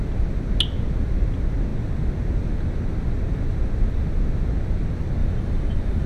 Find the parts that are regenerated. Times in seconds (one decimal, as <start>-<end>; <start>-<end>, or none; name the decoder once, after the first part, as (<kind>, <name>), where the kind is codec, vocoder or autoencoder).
5.2-6.1 (vocoder, BigVGAN v2)